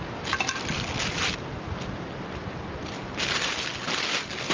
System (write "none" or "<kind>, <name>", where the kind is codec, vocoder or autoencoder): none